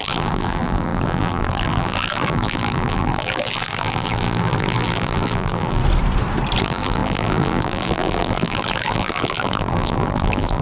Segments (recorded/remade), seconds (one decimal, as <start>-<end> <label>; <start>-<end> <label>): 0.0-5.8 remade; 5.8-6.6 recorded; 6.6-10.6 remade